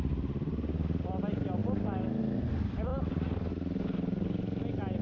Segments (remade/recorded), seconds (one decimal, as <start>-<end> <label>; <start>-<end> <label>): 0.0-5.0 recorded